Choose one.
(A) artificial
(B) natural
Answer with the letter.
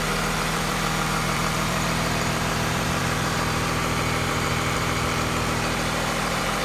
A